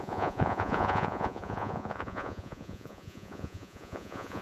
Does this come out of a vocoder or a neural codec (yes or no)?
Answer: yes